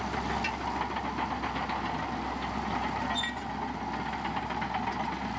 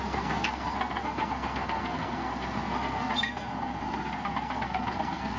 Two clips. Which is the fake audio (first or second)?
second